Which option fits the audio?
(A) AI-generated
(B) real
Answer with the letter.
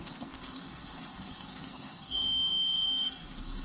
A